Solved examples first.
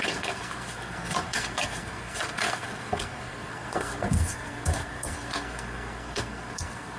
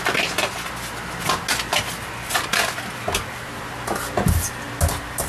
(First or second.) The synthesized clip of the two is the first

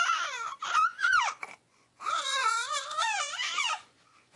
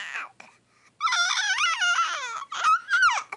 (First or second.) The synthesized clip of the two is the first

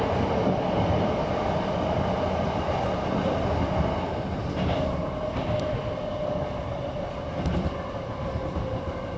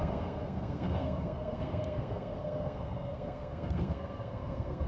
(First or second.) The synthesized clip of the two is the second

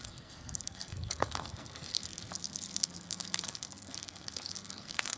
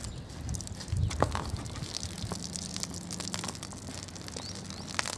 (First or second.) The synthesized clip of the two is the first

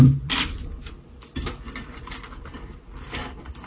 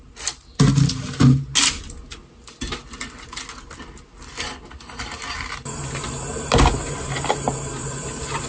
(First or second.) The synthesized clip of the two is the first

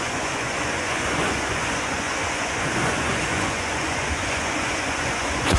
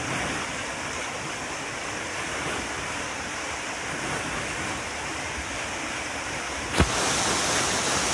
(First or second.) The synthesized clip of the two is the first